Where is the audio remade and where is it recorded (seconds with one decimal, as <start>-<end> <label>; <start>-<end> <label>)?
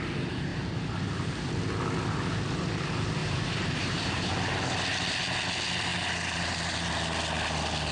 0.0-0.5 recorded; 0.5-1.5 remade; 1.5-3.2 recorded; 3.2-4.3 remade; 4.3-5.9 recorded; 5.9-6.9 remade; 6.9-7.9 recorded